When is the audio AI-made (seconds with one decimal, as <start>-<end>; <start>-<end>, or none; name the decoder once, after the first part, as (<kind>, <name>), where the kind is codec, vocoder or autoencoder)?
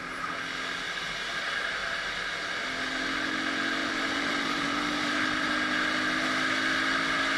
3.8-5.5 (vocoder, BigVGAN v2)